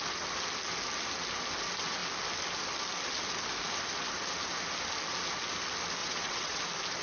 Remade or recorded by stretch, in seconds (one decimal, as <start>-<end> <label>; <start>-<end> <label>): 0.0-6.0 recorded; 6.0-6.6 remade; 6.6-7.0 recorded